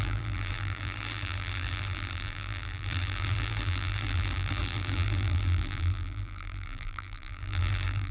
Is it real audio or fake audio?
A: fake